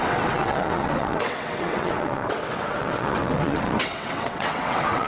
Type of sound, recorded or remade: remade